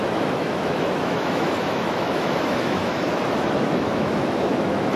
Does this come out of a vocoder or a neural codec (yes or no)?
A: yes